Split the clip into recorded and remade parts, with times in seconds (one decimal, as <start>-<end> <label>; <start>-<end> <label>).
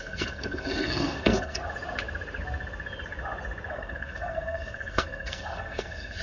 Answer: 0.0-1.6 remade; 1.6-3.7 recorded; 3.7-6.2 remade